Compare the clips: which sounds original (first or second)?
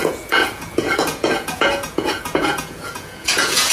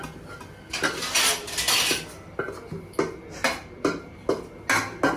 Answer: second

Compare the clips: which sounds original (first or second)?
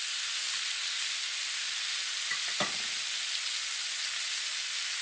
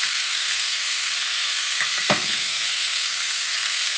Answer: first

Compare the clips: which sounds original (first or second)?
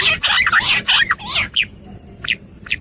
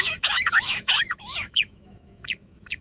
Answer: first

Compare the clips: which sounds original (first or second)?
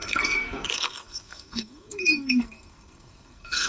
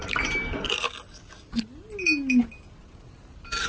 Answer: second